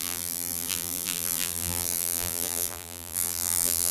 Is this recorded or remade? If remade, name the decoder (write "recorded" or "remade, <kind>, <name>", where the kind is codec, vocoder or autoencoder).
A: remade, vocoder, BigVGAN v2